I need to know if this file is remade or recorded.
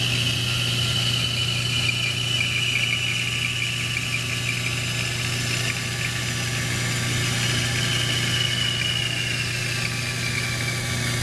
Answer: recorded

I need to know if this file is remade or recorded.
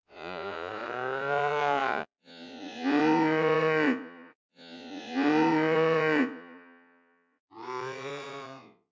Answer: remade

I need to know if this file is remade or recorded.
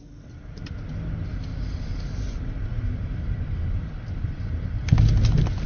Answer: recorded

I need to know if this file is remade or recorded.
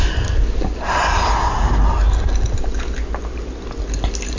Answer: recorded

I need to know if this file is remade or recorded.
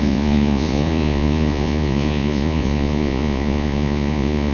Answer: remade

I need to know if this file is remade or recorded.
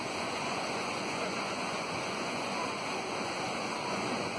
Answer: remade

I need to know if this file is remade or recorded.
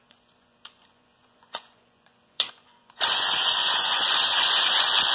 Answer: remade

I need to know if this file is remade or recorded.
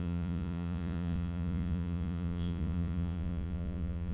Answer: remade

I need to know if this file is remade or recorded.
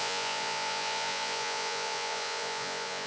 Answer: remade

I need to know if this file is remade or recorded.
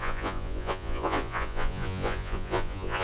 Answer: remade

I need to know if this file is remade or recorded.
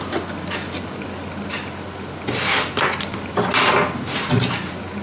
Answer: recorded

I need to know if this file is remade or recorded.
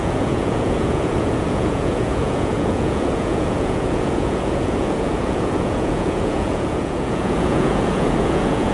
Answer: remade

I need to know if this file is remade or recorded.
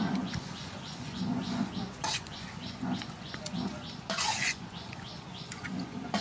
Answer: remade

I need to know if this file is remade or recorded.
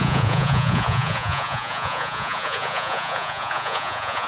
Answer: remade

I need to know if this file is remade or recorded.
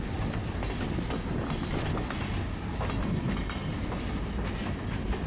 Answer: recorded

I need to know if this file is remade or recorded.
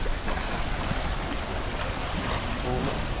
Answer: recorded